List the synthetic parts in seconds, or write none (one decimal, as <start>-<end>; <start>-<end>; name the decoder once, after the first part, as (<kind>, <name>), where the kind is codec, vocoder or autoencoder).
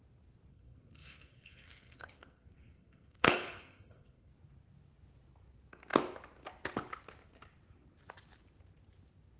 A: 0.5-4.3 (codec, SNAC)